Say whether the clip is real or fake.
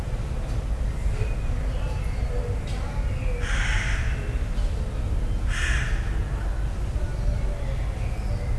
real